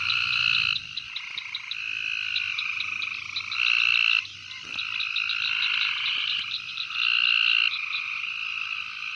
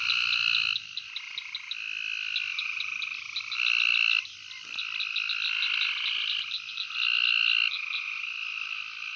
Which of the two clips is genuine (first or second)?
second